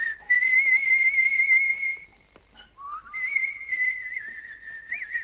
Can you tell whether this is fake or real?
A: real